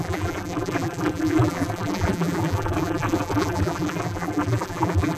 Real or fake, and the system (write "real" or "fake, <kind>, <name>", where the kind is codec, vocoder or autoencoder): fake, vocoder, BigVGAN v2